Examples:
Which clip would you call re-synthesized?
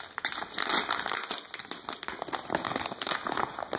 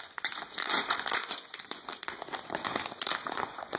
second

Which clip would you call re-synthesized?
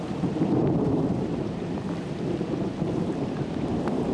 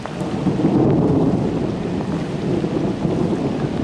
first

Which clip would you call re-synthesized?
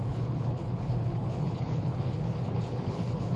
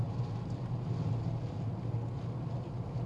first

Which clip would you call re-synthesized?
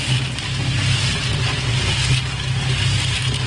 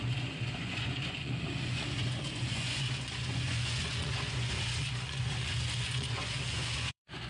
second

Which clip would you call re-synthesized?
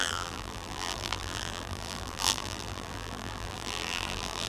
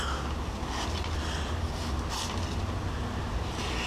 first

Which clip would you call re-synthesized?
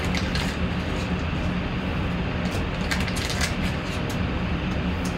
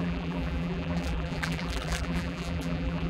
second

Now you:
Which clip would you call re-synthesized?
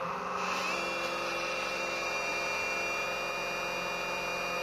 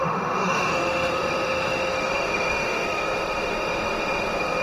second